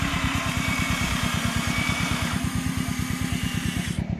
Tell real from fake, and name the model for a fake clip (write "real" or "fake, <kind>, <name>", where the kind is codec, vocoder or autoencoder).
fake, vocoder, BigVGAN v2